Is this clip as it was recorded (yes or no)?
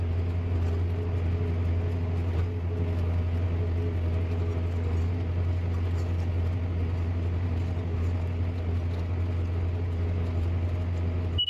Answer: yes